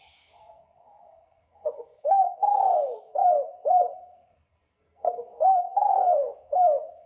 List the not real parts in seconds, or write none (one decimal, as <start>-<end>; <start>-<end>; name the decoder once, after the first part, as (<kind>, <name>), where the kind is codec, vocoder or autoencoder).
0.0-7.1 (codec, SNAC)